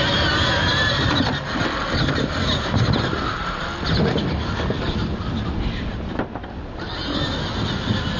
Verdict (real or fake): real